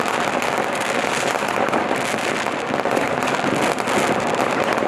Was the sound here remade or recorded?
recorded